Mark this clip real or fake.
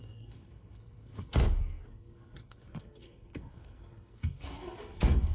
fake